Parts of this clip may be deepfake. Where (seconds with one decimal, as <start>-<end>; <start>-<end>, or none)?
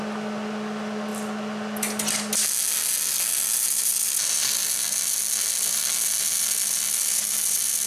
none